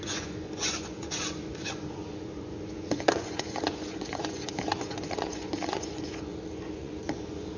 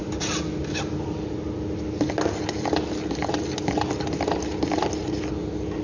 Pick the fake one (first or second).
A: first